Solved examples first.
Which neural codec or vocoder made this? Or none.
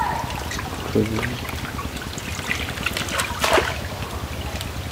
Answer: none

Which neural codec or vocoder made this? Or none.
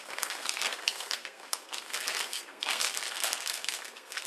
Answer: codec, SNAC